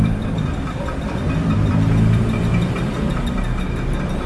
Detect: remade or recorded remade